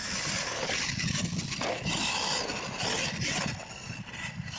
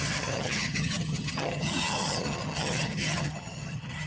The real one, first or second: first